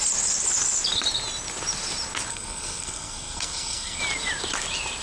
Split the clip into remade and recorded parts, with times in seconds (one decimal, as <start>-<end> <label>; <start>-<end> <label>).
0.0-2.3 recorded; 2.3-4.0 remade; 4.0-5.0 recorded

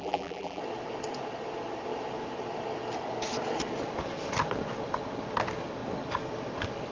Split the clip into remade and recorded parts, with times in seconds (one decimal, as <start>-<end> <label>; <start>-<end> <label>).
0.0-0.6 remade; 0.6-6.9 recorded

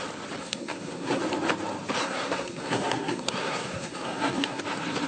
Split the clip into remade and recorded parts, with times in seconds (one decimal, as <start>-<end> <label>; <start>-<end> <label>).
0.0-0.4 recorded; 0.4-1.2 remade; 1.2-2.0 recorded; 2.0-4.6 remade; 4.6-5.1 recorded

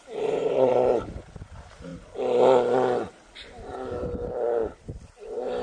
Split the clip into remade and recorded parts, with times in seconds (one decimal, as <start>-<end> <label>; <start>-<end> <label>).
0.0-0.7 remade; 0.7-1.4 recorded; 1.4-1.9 remade; 1.9-5.1 recorded; 5.1-5.6 remade

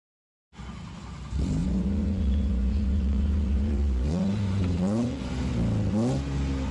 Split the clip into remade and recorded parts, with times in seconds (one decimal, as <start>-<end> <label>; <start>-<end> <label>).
0.0-1.6 recorded; 1.6-5.3 remade; 5.3-6.7 recorded

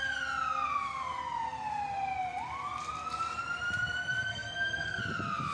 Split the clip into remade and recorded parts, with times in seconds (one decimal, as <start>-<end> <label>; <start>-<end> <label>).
0.0-4.3 recorded; 4.3-5.0 remade; 5.0-5.5 recorded